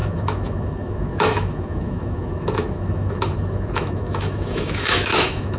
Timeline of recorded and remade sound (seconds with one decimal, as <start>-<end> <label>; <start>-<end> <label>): 0.0-5.6 remade